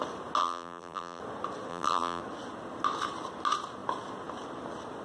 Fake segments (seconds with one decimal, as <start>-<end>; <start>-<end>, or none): 0.4-1.2; 1.7-2.2